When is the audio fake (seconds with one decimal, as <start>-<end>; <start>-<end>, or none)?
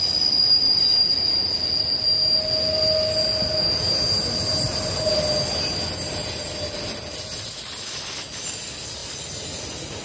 none